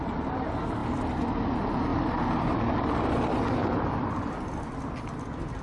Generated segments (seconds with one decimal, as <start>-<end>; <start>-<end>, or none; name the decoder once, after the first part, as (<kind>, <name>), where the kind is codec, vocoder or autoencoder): 0.8-1.4 (vocoder, BigVGAN v2); 1.9-3.1; 3.6-4.2